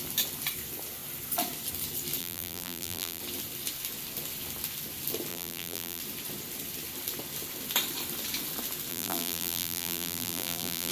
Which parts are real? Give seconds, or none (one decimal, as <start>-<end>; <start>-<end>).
0.0-2.2; 3.2-5.3; 6.0-8.9